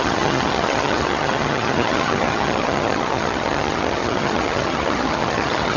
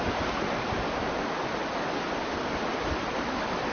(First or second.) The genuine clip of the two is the second